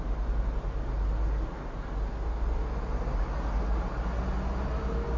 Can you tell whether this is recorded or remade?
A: recorded